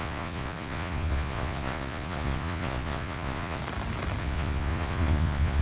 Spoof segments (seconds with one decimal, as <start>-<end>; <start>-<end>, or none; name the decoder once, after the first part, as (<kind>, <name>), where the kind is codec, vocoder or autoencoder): 0.0-3.6 (vocoder, Vocos); 4.2-5.6